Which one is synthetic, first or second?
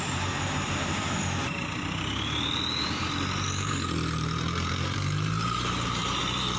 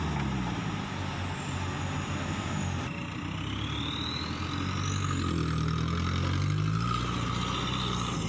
first